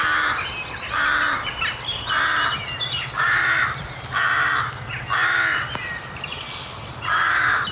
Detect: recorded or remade recorded